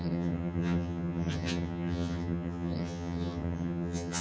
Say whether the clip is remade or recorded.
remade